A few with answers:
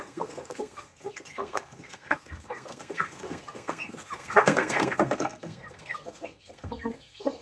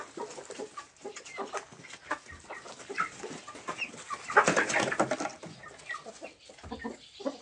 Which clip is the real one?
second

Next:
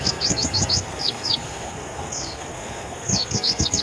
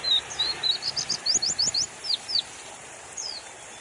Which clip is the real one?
second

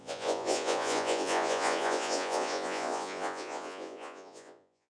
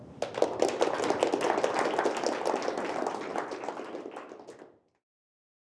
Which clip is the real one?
second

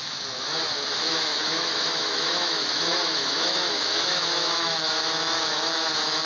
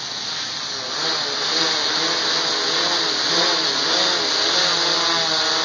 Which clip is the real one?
second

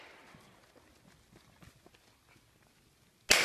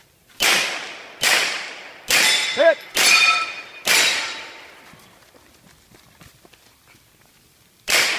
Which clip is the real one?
first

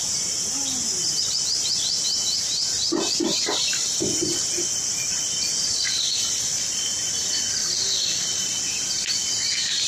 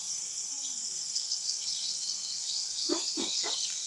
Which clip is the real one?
first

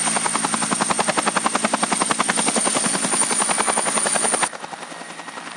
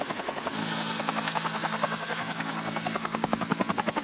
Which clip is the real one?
first